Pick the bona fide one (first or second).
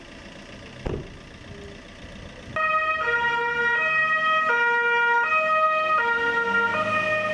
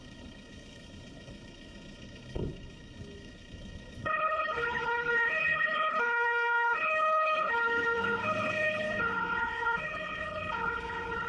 first